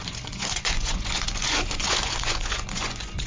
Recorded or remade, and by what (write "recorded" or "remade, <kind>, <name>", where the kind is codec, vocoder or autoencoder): remade, vocoder, Vocos